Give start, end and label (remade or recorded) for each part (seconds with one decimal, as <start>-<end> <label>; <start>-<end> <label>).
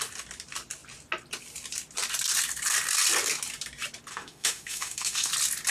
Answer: 0.0-4.1 recorded; 4.1-5.3 remade; 5.3-5.7 recorded